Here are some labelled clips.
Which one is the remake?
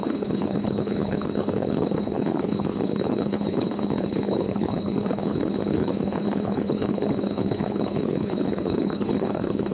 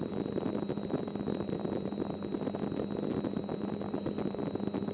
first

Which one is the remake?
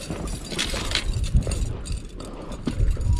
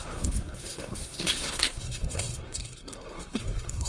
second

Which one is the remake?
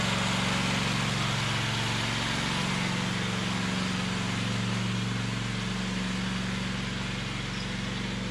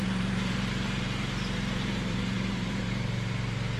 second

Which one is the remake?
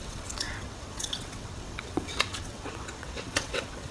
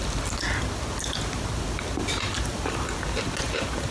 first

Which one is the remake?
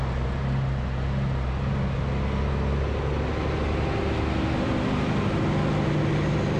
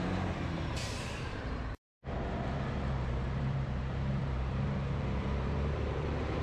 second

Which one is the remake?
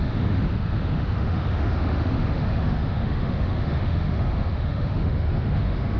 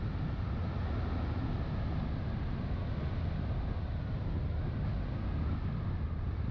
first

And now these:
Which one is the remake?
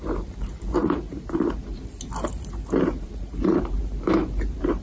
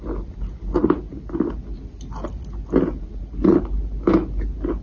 first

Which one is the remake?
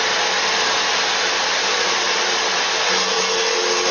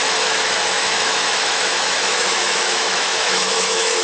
second